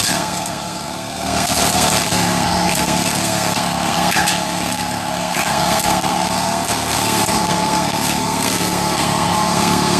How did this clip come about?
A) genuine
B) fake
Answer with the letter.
B